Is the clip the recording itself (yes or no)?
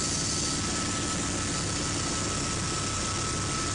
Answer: yes